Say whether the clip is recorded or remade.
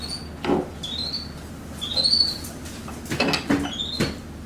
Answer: recorded